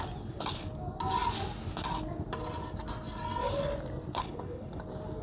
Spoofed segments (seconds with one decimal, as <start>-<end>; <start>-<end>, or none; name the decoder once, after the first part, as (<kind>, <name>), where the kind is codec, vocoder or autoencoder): 4.2-4.8 (codec, HILCodec)